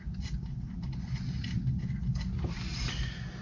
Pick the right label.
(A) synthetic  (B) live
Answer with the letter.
B